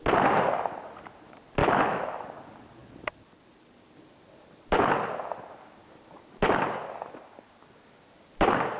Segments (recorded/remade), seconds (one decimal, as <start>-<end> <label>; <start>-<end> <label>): 0.0-1.6 recorded; 1.6-2.2 remade; 2.2-8.8 recorded